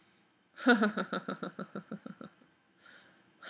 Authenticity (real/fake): fake